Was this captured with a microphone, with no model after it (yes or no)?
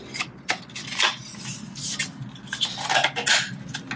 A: yes